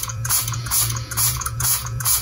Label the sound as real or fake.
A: fake